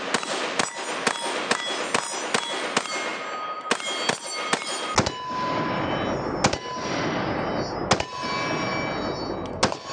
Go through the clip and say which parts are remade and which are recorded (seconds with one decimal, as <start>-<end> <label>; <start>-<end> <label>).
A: 0.0-9.9 recorded